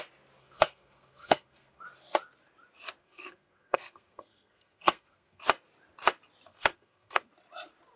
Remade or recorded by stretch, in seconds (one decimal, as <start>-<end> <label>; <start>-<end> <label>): 0.0-0.4 recorded; 0.4-1.8 remade; 1.8-3.0 recorded; 3.0-5.4 remade; 5.4-6.5 recorded; 6.5-7.3 remade; 7.3-8.0 recorded